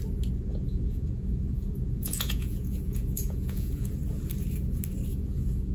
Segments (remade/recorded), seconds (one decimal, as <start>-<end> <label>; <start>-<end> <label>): 0.0-0.5 recorded; 0.5-3.9 remade; 3.9-5.1 recorded; 5.1-5.7 remade